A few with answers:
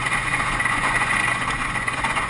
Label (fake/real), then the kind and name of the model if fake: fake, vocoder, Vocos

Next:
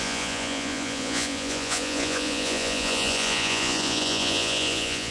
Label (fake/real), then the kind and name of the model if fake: fake, vocoder, Vocos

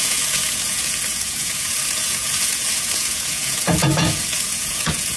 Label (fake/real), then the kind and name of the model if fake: fake, vocoder, Vocos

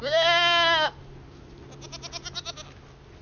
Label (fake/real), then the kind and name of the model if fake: real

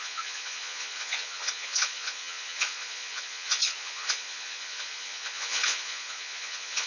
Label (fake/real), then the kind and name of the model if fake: fake, vocoder, Vocos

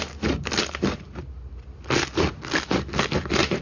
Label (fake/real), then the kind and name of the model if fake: real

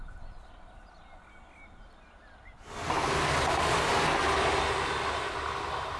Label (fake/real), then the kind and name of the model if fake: real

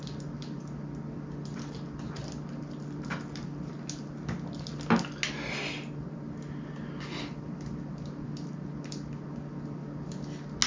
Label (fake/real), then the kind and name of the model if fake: real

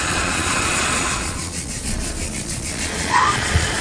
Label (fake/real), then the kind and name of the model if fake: fake, vocoder, Vocos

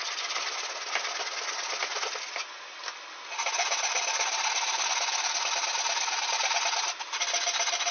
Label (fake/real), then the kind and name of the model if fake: real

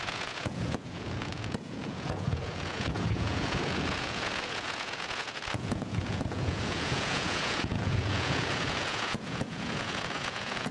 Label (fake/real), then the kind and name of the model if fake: fake, vocoder, Vocos